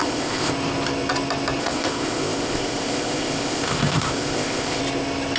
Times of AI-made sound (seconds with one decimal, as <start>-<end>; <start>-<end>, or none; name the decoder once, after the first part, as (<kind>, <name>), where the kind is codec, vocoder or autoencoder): 0.0-0.5 (codec, ZipCodec); 1.6-4.8

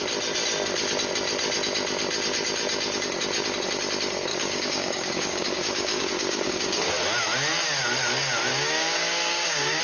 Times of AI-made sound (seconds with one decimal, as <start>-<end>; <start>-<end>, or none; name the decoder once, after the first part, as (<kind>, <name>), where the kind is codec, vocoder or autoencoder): 4.3-6.9 (codec, DAC); 8.5-9.8